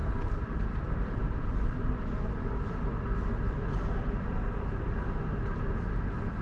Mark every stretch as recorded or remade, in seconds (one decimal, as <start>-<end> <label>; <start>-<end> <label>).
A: 0.0-3.7 recorded; 3.7-4.4 remade; 4.4-6.4 recorded